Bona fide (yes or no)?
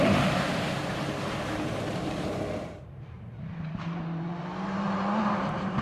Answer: no